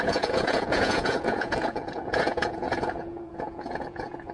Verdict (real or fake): fake